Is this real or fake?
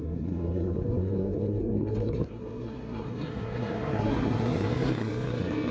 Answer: fake